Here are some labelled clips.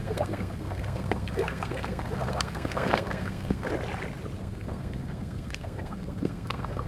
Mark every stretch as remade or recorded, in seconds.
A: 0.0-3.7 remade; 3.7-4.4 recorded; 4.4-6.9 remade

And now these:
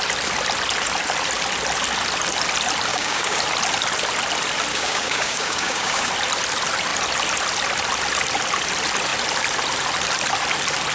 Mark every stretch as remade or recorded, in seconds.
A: 0.0-2.9 recorded; 2.9-3.4 remade; 3.4-4.7 recorded; 4.7-6.1 remade; 6.1-10.9 recorded

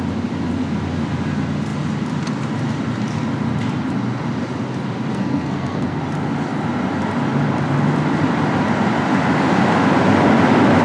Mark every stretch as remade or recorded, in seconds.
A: 0.0-5.1 recorded; 5.1-6.0 remade; 6.0-10.8 recorded

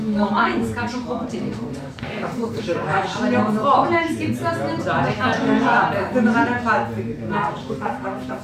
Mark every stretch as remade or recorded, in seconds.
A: 0.0-0.6 remade; 0.6-1.3 recorded; 1.3-3.1 remade; 3.1-5.1 recorded; 5.1-5.8 remade; 5.8-7.0 recorded; 7.0-8.4 remade

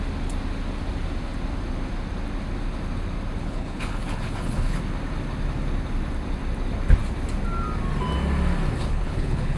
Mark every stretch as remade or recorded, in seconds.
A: 0.0-3.4 recorded; 3.4-4.8 remade; 4.8-8.8 recorded; 8.8-9.6 remade

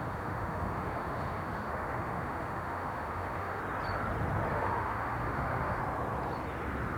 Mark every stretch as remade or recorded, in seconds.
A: 0.0-3.6 remade; 3.6-4.5 recorded; 4.5-5.8 remade; 5.8-7.0 recorded

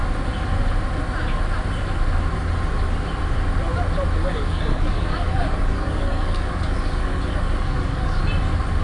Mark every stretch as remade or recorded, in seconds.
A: 0.0-4.3 recorded; 4.3-8.2 remade; 8.2-8.8 recorded

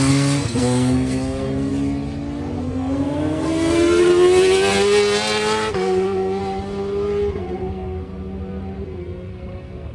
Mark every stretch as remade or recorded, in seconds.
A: 0.0-1.7 remade; 1.7-2.6 recorded; 2.6-4.1 remade; 4.1-5.7 recorded; 5.7-6.4 remade; 6.4-7.3 recorded; 7.3-8.1 remade; 8.1-9.0 recorded; 9.0-9.9 remade